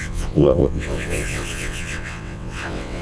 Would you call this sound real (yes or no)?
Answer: no